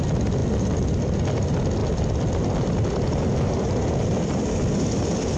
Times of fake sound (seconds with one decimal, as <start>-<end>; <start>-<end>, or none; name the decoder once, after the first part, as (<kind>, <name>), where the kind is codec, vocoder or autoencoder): none